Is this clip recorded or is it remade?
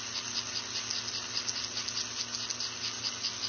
recorded